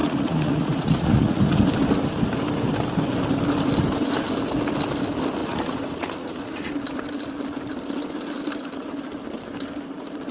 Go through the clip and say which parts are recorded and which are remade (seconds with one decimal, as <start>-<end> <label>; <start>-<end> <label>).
0.0-1.4 remade; 1.4-5.4 recorded; 5.4-6.7 remade; 6.7-10.3 recorded